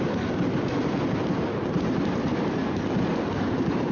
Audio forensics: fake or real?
real